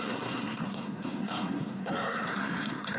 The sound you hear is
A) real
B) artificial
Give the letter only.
B